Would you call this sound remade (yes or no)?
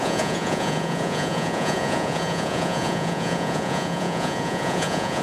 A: yes